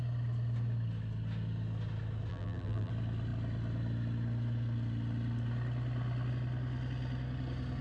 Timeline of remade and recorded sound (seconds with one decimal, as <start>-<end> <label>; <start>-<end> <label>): 0.0-2.3 recorded; 2.3-2.9 remade; 2.9-7.8 recorded